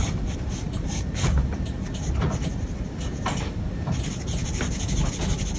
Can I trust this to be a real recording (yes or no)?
yes